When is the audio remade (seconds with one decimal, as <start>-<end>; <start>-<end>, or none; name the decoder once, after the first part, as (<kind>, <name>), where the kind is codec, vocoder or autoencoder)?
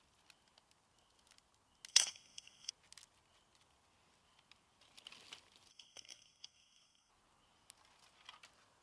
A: 1.9-2.7 (codec, SNAC); 5.7-7.1